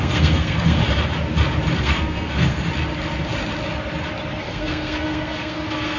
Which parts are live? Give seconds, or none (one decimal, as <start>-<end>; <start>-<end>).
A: 0.8-1.8; 2.7-4.4